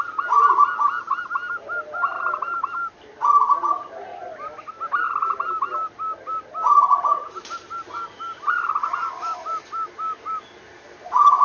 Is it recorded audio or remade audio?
recorded